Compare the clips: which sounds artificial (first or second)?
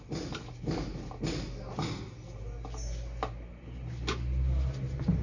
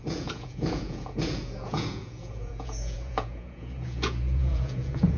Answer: second